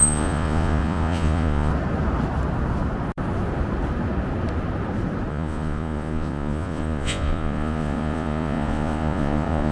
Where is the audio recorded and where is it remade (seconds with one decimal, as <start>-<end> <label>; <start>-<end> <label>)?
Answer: 0.0-1.7 remade; 1.7-5.3 recorded; 5.3-9.7 remade